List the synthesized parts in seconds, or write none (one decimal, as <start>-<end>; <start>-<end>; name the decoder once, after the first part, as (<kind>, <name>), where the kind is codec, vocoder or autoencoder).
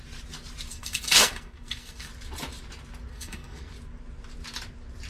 0.7-2.1 (codec, SNAC); 3.1-3.7